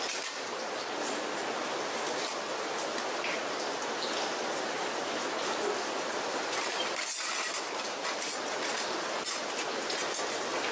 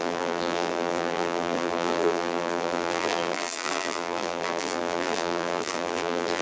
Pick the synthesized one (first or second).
second